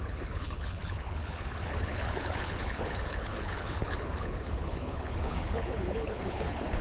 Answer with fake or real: fake